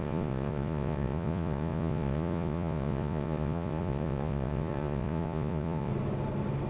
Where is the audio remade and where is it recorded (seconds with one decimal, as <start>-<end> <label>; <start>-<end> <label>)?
0.0-5.9 remade; 5.9-6.7 recorded